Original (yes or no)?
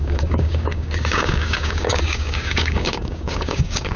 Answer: no